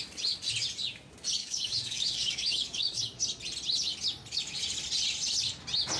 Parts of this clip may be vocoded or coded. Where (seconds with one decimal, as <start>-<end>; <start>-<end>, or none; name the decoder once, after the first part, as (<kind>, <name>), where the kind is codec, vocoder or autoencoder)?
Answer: 1.4-3.0 (codec, DAC)